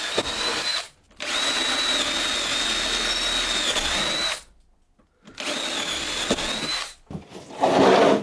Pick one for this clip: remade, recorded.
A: recorded